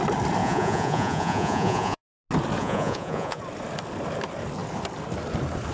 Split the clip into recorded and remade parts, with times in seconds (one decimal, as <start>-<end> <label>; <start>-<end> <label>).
0.0-0.4 recorded; 0.4-2.0 remade; 2.0-2.6 recorded; 2.6-3.4 remade; 3.4-5.7 recorded